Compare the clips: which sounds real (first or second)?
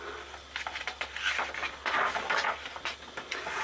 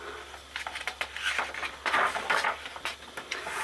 first